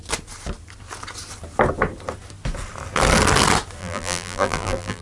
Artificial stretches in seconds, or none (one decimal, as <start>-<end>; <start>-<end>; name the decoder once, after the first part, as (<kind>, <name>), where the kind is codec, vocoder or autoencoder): 3.8-5.0 (vocoder, BigVGAN v2)